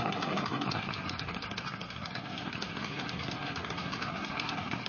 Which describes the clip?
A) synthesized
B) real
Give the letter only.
A